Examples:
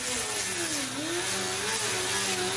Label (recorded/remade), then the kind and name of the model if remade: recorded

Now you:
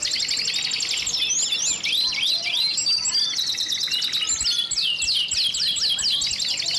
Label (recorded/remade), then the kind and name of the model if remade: recorded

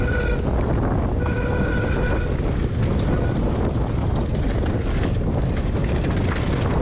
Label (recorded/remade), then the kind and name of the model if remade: recorded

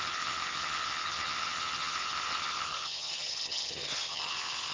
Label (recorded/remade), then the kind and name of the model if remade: remade, vocoder, HiFi-GAN